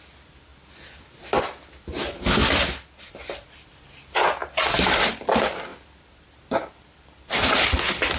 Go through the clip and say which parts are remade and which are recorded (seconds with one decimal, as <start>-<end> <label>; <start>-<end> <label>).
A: 0.0-8.2 recorded